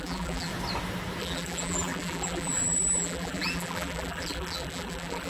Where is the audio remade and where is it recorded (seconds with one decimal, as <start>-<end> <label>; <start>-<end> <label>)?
0.0-0.5 remade; 0.5-1.2 recorded; 1.2-5.3 remade